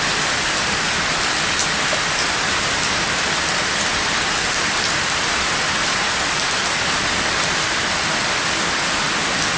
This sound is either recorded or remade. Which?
recorded